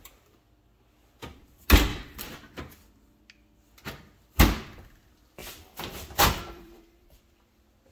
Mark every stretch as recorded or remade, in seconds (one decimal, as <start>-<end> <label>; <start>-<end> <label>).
0.0-5.4 recorded; 5.4-7.2 remade; 7.2-7.9 recorded